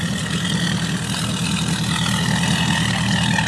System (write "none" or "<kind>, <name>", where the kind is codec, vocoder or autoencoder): none